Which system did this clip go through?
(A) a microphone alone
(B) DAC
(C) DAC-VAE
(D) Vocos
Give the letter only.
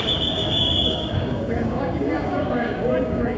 B